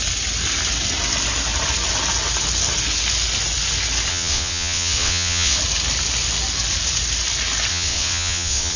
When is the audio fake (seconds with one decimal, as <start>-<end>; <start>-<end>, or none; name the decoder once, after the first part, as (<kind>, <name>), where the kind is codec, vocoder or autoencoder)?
4.1-5.6 (vocoder, WaveNeXt); 7.7-8.8